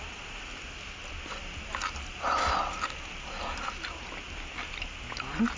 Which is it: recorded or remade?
recorded